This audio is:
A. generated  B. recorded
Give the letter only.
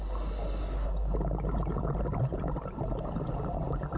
B